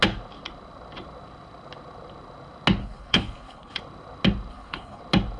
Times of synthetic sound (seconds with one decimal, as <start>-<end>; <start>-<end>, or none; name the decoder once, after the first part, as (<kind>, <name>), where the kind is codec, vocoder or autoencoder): 2.8-3.8 (codec, HILCodec); 4.5-5.0